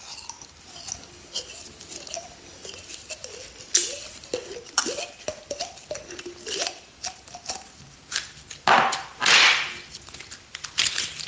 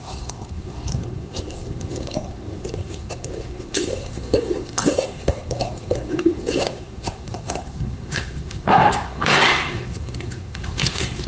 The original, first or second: first